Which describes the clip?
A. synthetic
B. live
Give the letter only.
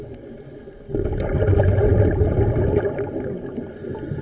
B